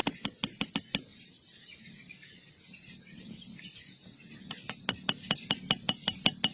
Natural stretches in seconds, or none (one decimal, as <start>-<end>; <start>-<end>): 0.7-1.1; 4.7-6.5